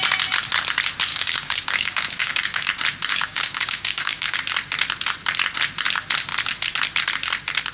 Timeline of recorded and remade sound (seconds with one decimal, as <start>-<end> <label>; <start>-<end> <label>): 0.0-1.1 recorded; 1.1-2.7 remade; 2.7-3.1 recorded; 3.1-4.4 remade; 4.4-7.7 recorded